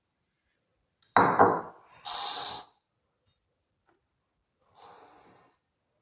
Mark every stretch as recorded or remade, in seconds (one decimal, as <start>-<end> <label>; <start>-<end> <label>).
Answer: 0.0-6.0 recorded